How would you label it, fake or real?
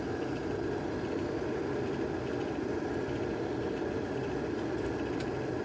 real